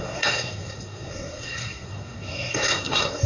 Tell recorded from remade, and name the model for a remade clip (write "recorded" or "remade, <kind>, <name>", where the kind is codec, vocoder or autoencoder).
remade, codec, SNAC